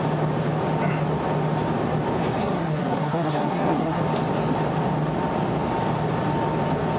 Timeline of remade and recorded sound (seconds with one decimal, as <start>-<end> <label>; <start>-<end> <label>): 0.0-2.4 recorded; 2.4-4.0 remade; 4.0-7.0 recorded